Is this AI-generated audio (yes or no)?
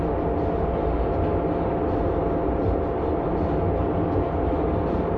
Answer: no